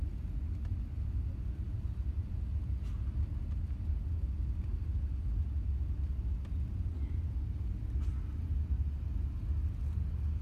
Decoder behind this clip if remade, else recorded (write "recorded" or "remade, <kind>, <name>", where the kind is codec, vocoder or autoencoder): recorded